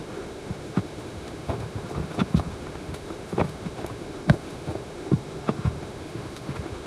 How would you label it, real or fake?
fake